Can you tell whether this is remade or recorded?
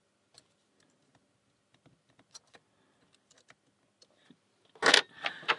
recorded